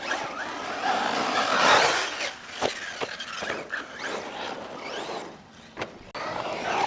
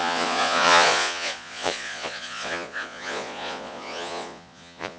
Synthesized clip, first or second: second